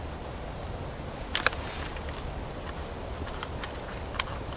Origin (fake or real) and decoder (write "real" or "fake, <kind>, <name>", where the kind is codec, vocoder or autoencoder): real